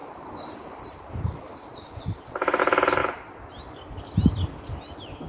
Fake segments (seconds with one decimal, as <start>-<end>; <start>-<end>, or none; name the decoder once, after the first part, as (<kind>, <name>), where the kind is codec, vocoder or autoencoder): 0.0-2.6 (vocoder, BigVGAN v2)